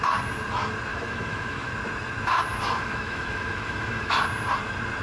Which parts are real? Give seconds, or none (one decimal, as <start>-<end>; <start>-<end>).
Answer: 0.0-0.9; 1.7-2.6; 4.2-5.0